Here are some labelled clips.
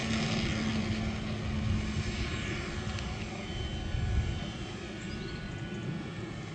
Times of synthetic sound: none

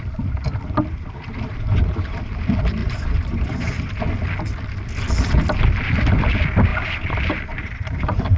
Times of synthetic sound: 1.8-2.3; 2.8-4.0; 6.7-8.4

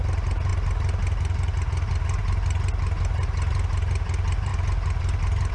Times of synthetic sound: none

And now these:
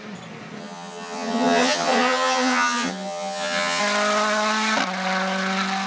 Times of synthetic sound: 0.6-3.8

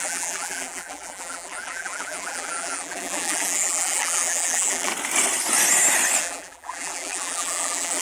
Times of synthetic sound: 0.0-4.9; 6.2-8.0

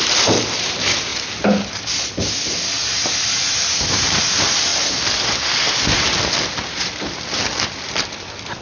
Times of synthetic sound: 0.0-1.1; 2.4-7.4; 8.1-8.6